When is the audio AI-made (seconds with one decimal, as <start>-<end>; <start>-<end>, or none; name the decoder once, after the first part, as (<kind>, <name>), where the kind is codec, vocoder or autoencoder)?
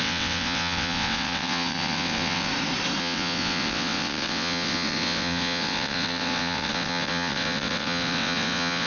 0.0-2.5 (vocoder, WaveNeXt); 3.0-8.9